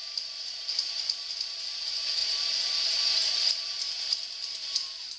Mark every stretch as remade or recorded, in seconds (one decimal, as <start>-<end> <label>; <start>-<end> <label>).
0.0-5.2 recorded